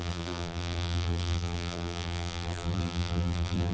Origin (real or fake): fake